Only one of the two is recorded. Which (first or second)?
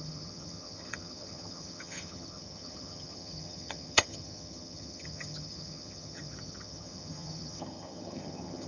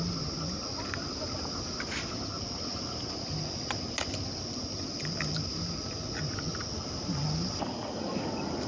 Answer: second